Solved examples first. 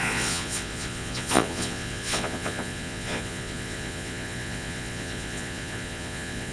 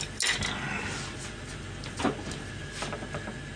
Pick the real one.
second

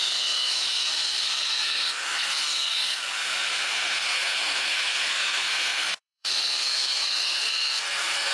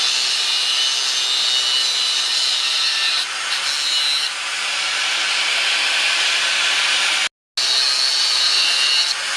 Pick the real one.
second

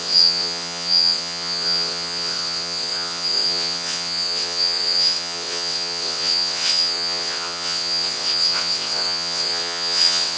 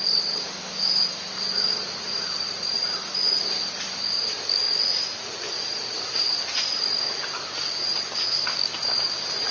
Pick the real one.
second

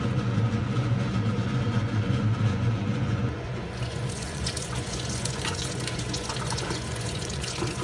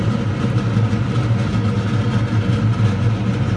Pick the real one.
second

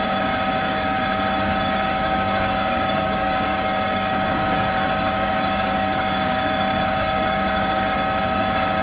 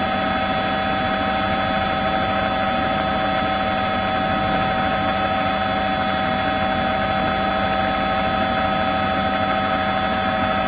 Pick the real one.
second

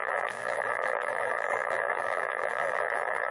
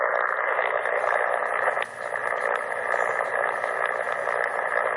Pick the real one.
second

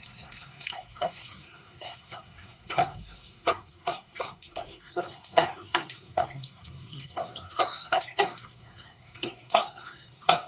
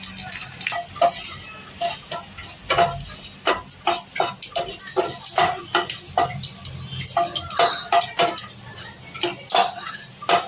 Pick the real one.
second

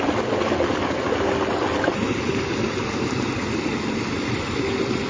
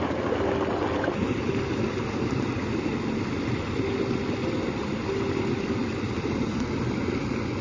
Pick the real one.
second